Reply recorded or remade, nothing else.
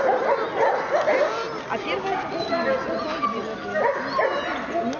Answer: recorded